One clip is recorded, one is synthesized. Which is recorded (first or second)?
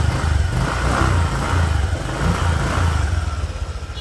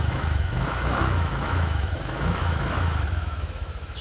first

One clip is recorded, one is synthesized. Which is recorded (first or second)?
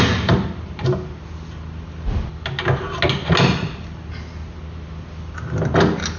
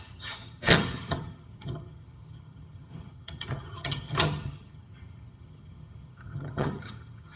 first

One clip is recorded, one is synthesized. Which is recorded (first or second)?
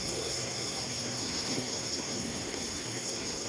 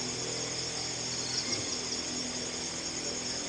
second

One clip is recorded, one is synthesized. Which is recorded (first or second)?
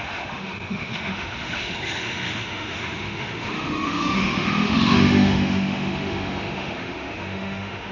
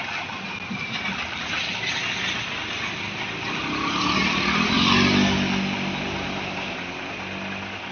second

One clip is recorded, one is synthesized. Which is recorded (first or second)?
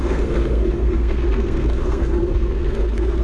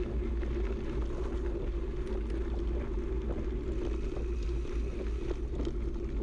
second